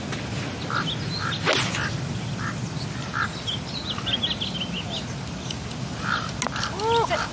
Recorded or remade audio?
recorded